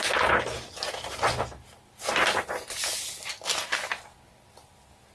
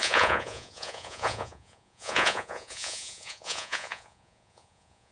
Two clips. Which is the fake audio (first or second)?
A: second